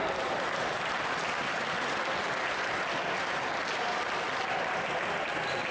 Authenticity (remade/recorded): recorded